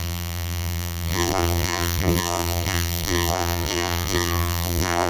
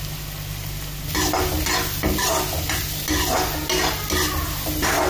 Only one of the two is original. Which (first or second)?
second